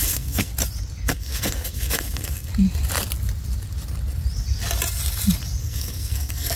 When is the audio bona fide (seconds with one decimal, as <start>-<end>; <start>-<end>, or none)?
0.5-1.1; 2.5-5.6